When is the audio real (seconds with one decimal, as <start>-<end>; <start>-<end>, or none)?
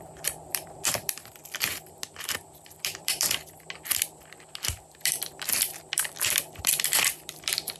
none